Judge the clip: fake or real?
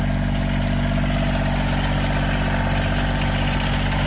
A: real